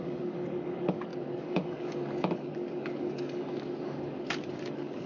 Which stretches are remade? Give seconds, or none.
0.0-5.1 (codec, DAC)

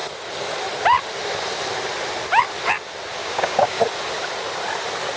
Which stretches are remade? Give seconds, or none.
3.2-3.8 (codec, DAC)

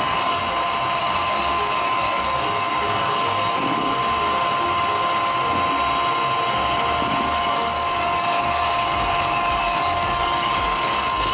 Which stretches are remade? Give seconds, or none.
0.0-0.4 (codec, DAC); 1.0-4.0; 7.2-11.3

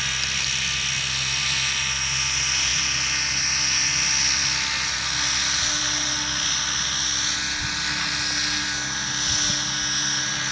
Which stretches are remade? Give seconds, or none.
none